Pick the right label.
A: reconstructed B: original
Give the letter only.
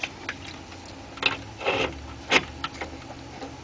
B